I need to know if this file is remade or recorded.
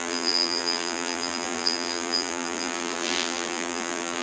remade